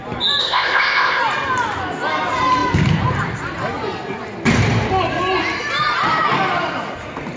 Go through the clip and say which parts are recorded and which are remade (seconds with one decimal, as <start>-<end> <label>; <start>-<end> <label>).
0.0-0.4 recorded; 0.4-1.2 remade; 1.2-7.4 recorded